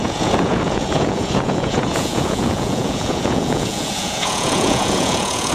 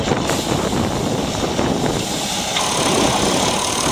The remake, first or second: first